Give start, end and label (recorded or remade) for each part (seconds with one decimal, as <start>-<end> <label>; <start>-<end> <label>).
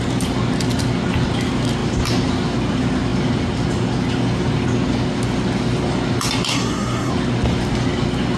0.0-6.5 recorded; 6.5-7.1 remade; 7.1-8.4 recorded